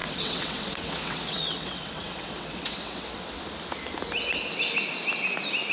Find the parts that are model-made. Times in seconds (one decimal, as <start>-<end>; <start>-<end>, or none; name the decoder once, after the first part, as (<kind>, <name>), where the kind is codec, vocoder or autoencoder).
0.0-3.4 (vocoder, WaveNeXt)